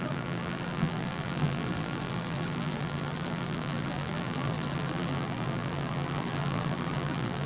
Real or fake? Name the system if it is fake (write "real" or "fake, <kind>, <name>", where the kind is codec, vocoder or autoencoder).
fake, vocoder, BigVGAN v2